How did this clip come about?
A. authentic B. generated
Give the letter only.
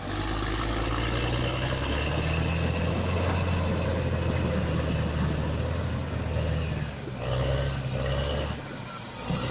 A